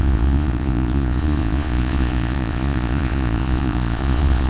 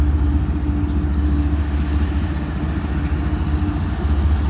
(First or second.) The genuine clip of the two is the second